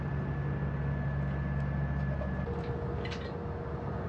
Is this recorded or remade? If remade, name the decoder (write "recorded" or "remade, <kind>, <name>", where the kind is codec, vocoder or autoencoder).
recorded